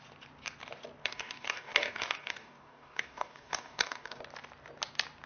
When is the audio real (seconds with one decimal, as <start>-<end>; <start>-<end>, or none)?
0.0-1.0; 4.2-5.3